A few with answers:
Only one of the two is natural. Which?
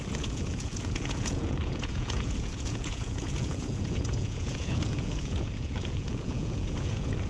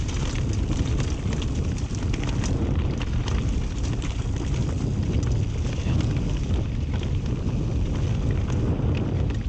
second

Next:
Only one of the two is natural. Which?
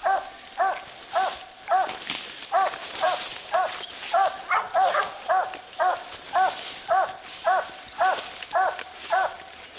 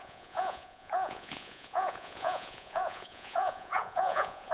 first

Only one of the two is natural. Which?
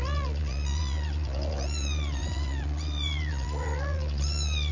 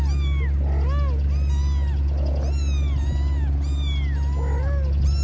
second